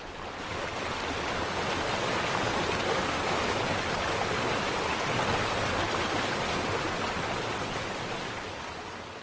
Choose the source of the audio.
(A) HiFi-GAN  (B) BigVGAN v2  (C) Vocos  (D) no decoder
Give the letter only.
D